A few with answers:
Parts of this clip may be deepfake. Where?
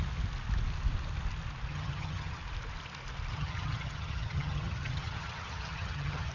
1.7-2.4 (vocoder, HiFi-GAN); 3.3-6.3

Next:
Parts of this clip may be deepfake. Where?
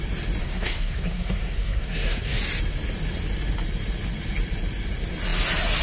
0.4-2.4 (codec, SNAC)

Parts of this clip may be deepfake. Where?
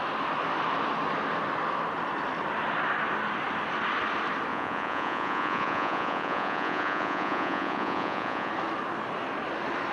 4.5-8.5 (vocoder, Vocos)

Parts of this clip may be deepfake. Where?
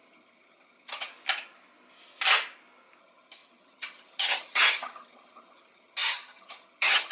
0.0-1.1 (vocoder, HiFi-GAN); 3.0-7.1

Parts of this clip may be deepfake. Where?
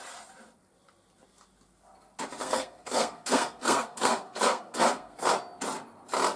2.4-5.3 (codec, SNAC)